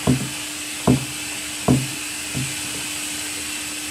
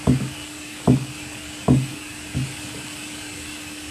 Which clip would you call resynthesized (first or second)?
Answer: second